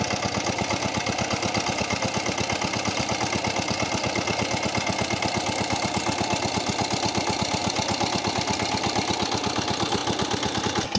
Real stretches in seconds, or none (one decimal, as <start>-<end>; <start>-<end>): 0.0-11.0